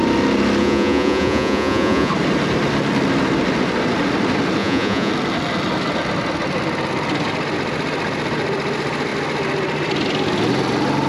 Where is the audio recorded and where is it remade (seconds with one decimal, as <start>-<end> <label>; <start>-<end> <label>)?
0.0-0.6 recorded; 0.6-2.1 remade; 2.1-4.6 recorded; 4.6-5.1 remade; 5.1-11.1 recorded